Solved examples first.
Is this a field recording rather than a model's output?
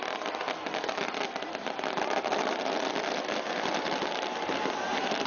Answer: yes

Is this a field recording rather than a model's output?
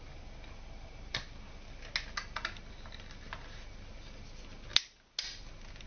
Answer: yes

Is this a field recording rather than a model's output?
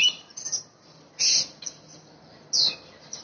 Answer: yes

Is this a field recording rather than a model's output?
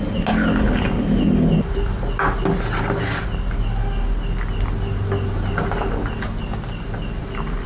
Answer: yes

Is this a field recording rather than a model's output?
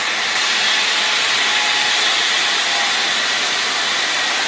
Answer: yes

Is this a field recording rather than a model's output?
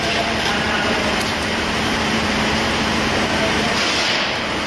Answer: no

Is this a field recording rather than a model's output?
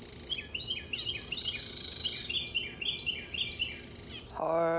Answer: yes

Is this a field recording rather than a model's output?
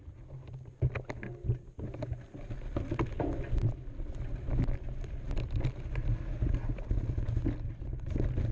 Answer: yes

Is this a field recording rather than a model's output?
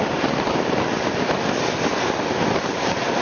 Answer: yes